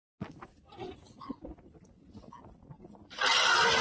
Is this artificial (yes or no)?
no